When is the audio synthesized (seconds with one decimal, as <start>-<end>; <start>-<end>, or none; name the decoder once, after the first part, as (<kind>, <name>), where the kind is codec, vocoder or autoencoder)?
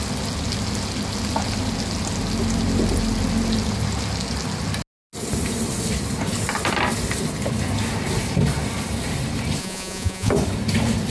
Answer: 9.6-10.3 (vocoder, Vocos)